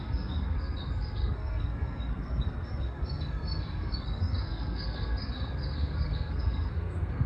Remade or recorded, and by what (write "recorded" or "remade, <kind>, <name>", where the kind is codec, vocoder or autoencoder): remade, codec, SNAC